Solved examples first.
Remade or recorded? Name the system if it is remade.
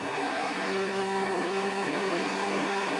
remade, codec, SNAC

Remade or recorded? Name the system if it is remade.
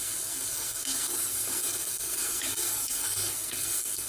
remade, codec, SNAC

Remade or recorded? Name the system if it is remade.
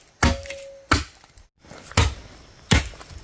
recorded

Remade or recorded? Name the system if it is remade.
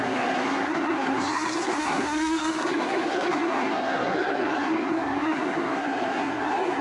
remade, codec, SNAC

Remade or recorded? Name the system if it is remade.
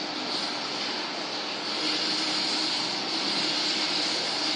recorded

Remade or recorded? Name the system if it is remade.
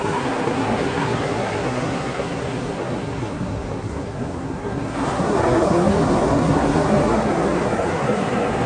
remade, codec, SNAC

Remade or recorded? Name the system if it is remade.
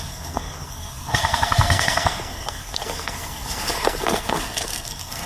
remade, codec, SNAC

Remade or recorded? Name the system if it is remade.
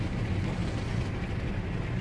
recorded